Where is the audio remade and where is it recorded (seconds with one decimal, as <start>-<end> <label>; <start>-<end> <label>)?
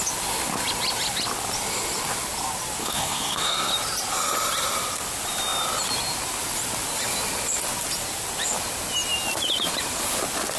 0.0-2.8 recorded; 2.8-3.7 remade; 3.7-10.6 recorded